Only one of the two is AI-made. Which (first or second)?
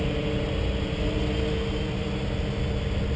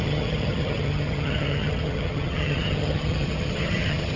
second